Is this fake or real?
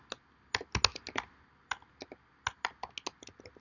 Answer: real